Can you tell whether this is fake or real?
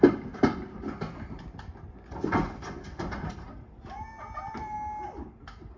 real